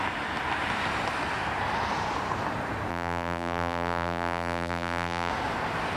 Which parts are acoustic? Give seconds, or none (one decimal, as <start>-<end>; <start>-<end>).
0.0-2.9; 5.3-6.0